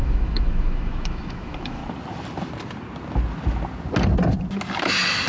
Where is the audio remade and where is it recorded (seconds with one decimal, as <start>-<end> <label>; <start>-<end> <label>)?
0.0-1.8 remade; 1.8-5.3 recorded